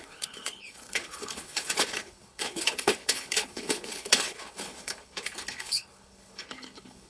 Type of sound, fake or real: fake